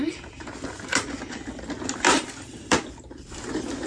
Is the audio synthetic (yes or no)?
no